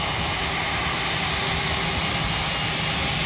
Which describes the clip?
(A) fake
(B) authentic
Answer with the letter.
B